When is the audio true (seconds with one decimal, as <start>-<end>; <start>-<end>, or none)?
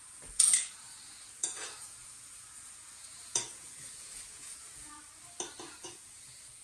4.9-5.5